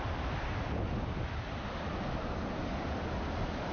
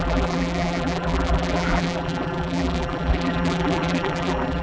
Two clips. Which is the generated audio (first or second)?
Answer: second